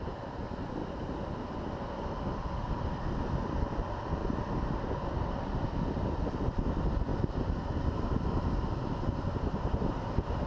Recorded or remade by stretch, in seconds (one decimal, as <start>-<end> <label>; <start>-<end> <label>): 0.0-10.5 recorded